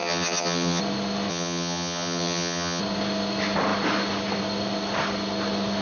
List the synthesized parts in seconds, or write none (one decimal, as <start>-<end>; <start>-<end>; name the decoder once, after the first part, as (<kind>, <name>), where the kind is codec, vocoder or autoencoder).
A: 0.0-0.8 (vocoder, HiFi-GAN); 1.3-2.8